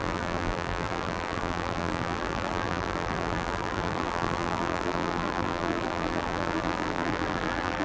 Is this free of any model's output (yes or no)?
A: no